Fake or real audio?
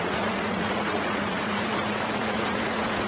fake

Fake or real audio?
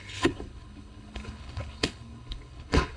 fake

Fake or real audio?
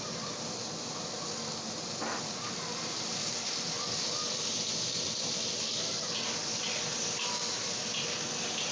real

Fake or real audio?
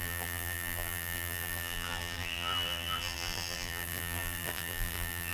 fake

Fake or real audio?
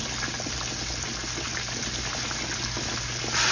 real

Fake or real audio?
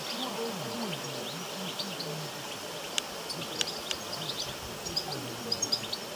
real